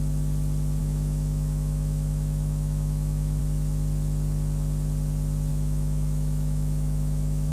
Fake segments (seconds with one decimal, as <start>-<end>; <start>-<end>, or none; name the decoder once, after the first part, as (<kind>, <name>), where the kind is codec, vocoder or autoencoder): 0.8-3.4 (autoencoder, DAC-VAE); 5.5-7.5

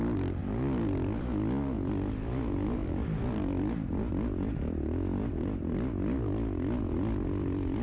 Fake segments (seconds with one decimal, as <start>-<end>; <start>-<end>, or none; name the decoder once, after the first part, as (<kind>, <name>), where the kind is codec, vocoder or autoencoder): none

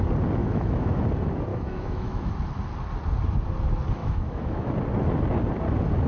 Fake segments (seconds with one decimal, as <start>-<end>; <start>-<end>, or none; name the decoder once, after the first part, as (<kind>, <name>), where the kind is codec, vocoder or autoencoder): 0.4-1.0 (autoencoder, DAC-VAE); 1.5-2.3; 4.0-4.7

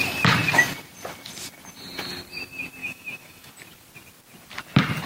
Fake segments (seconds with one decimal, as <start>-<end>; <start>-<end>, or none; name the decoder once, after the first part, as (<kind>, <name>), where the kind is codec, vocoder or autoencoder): 2.8-3.5 (autoencoder, DAC-VAE)

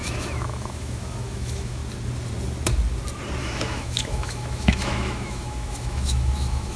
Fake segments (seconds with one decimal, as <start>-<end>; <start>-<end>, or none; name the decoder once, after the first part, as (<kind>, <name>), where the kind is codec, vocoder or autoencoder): 0.0-1.8 (autoencoder, DAC-VAE); 3.4-6.8

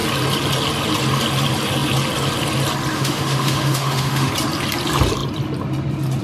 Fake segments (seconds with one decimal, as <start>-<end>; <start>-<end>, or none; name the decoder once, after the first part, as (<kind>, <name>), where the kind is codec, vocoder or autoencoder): 2.9-4.3 (autoencoder, DAC-VAE)

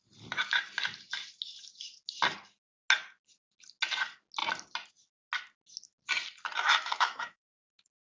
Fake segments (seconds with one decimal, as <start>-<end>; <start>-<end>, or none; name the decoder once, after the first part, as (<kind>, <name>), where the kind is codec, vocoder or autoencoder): 6.6-7.5 (autoencoder, DAC-VAE)

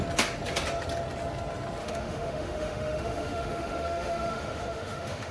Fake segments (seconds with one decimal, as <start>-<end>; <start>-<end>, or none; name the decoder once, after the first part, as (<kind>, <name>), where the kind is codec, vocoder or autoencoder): 1.8-5.3 (autoencoder, DAC-VAE)